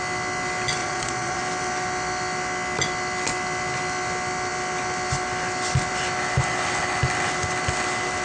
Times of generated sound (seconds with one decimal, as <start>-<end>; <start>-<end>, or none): 0.8-1.4